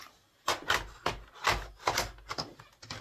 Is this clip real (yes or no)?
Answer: yes